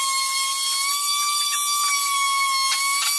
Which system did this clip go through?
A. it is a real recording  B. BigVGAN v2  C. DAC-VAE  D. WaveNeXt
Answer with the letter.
A